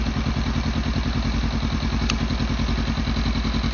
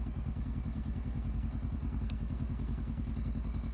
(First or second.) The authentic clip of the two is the first